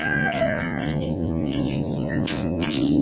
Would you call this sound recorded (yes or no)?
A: no